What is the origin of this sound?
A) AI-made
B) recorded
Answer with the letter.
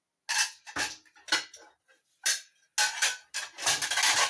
B